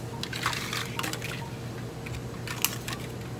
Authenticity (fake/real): real